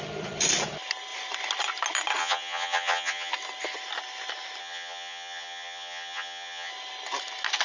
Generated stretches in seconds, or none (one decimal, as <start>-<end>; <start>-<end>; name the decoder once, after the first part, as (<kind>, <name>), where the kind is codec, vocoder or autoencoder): 2.2-3.3 (vocoder, HiFi-GAN); 4.6-6.7